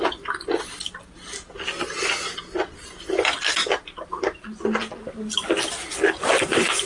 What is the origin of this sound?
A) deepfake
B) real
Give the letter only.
B